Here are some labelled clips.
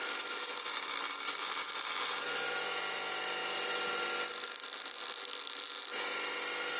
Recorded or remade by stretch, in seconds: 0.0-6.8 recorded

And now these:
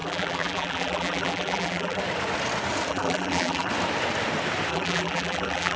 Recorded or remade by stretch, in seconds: 0.0-2.0 remade; 2.0-2.9 recorded; 2.9-3.7 remade; 3.7-4.7 recorded; 4.7-5.8 remade

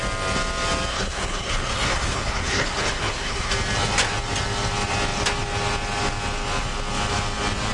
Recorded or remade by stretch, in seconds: 0.0-0.9 recorded; 0.9-3.5 remade; 3.5-7.7 recorded

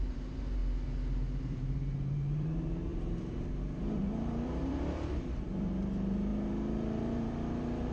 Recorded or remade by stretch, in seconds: 0.0-0.6 remade; 0.6-1.4 recorded; 1.4-7.9 remade